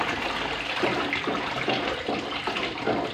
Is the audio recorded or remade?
recorded